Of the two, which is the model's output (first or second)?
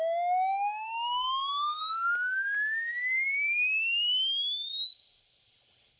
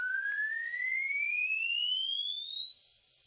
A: second